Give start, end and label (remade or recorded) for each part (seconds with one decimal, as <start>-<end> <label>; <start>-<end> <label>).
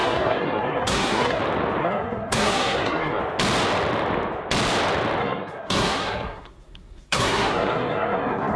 0.0-1.4 remade; 1.4-1.8 recorded; 1.8-3.2 remade; 3.2-5.2 recorded; 5.2-8.6 remade